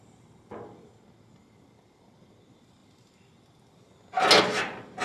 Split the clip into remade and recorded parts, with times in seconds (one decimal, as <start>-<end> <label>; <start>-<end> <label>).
0.0-5.0 recorded